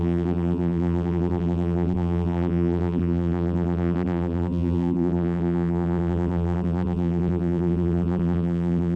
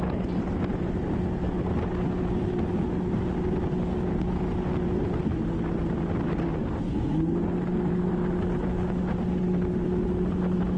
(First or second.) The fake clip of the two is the first